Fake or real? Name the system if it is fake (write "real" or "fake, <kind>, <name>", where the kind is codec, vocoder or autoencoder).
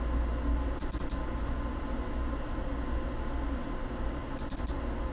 real